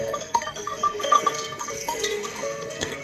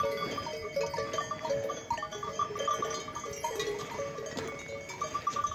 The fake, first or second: first